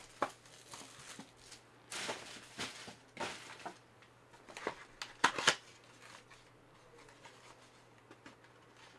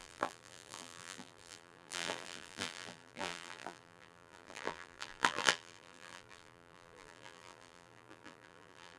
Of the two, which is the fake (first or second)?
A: second